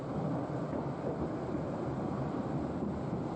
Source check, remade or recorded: recorded